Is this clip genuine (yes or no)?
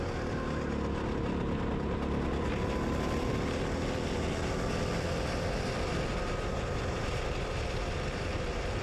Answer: yes